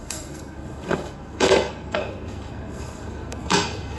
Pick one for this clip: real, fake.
fake